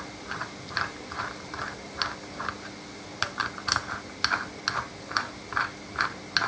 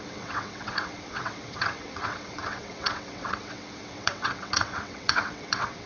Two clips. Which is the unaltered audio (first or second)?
first